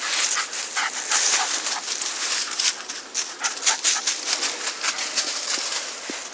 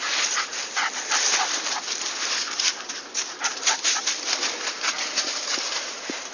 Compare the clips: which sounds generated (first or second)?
second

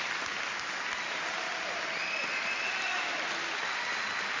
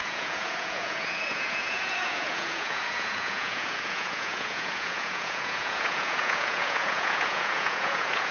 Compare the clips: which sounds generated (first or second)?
second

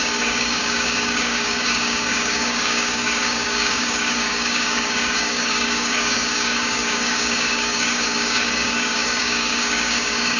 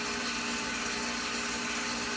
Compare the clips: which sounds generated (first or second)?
first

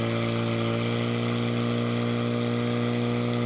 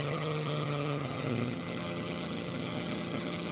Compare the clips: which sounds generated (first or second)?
second